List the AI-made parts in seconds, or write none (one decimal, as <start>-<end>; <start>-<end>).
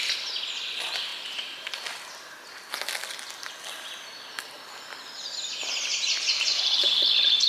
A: 5.9-6.9